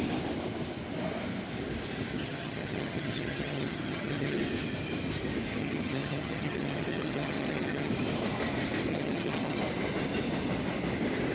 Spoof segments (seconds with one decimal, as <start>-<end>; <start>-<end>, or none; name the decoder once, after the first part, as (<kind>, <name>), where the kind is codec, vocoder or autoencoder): 2.1-4.4 (vocoder, HiFi-GAN); 5.5-7.9; 8.9-9.6